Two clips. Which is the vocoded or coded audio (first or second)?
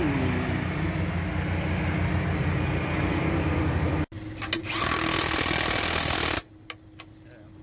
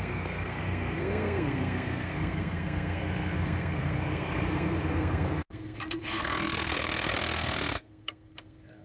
second